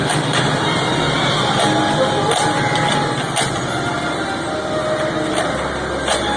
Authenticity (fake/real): real